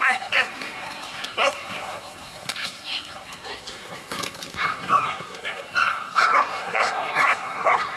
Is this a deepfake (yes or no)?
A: yes